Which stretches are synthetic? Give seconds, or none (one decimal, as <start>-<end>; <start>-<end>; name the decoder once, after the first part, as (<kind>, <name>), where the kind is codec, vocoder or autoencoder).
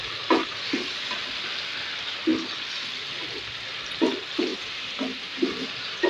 4.5-6.1 (vocoder, BigVGAN v2)